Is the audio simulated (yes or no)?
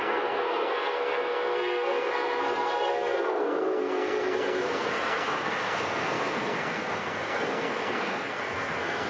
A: yes